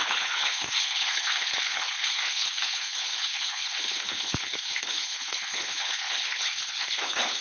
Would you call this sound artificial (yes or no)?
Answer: yes